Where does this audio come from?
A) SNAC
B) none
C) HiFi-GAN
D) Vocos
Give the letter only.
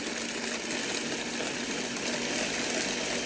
B